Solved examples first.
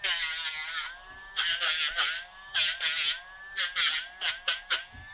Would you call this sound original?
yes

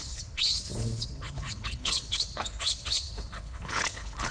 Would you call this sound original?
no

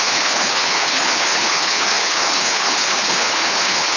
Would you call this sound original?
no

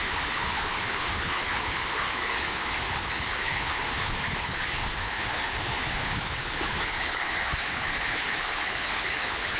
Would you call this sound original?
no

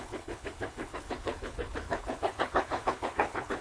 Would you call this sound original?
no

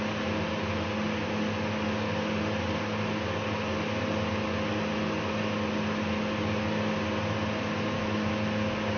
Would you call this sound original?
yes